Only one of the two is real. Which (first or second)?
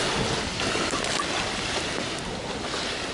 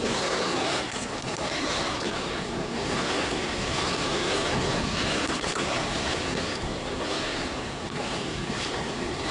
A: first